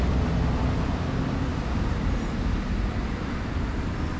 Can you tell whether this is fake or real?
real